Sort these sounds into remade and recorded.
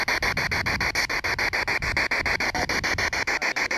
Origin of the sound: recorded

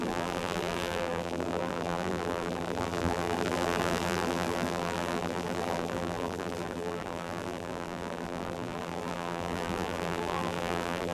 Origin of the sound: remade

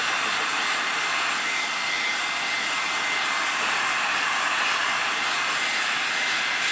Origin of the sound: recorded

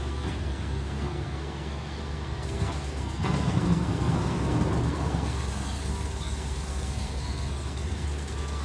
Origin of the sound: remade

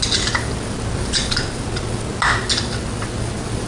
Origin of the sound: recorded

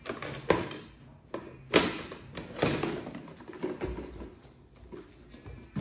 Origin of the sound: recorded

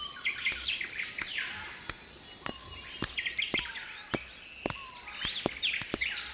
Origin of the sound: recorded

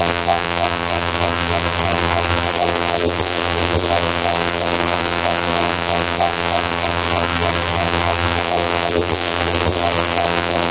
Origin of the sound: remade